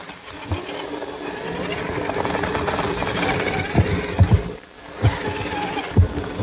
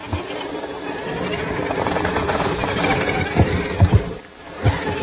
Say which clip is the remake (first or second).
second